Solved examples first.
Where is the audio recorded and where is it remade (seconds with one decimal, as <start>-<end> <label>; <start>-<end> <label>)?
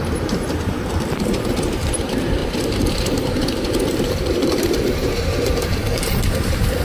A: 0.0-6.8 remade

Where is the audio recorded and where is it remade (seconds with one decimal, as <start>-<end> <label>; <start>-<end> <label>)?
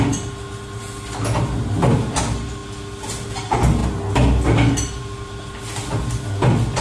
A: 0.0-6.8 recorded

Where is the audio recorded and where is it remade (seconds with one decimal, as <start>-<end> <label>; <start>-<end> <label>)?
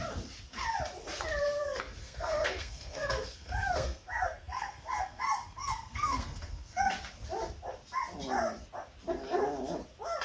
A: 0.0-2.0 recorded; 2.0-6.8 remade; 6.8-10.2 recorded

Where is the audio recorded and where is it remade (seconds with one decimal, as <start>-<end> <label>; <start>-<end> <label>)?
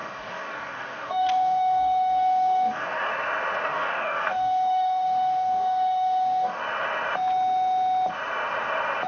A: 0.0-3.1 remade; 3.1-3.6 recorded; 3.6-6.6 remade; 6.6-9.1 recorded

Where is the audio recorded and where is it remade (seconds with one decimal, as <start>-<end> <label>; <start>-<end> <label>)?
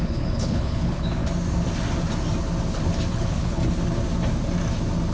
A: 0.0-1.2 remade; 1.2-3.1 recorded; 3.1-3.6 remade; 3.6-5.1 recorded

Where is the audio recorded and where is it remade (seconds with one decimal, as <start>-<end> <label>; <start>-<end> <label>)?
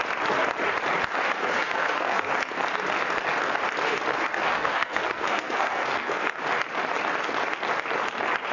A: 0.0-1.4 recorded; 1.4-2.3 remade; 2.3-4.1 recorded; 4.1-6.4 remade; 6.4-8.5 recorded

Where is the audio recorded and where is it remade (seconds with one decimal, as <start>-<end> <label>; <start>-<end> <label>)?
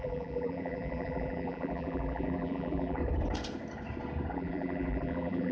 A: 0.0-3.0 remade; 3.0-4.3 recorded; 4.3-5.5 remade